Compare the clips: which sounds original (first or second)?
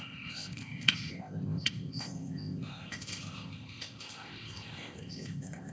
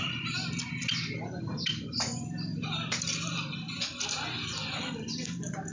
second